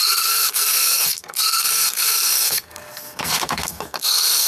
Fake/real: fake